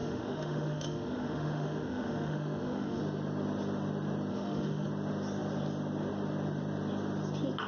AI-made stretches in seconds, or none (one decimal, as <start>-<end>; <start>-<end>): 0.0-3.0; 4.3-4.9